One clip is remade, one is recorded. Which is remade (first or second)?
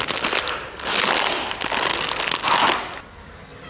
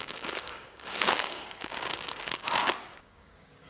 second